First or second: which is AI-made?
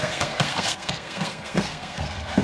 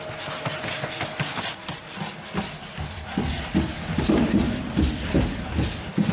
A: first